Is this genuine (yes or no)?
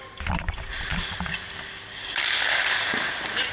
yes